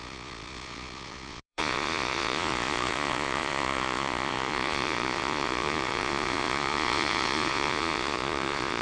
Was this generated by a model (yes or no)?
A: yes